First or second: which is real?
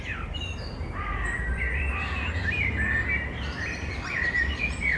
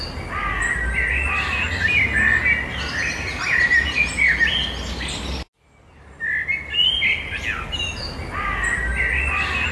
second